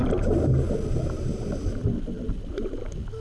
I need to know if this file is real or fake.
real